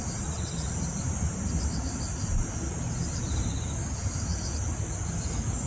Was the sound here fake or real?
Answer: real